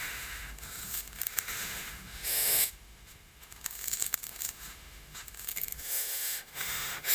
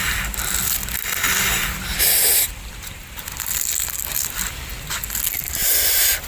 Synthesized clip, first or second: first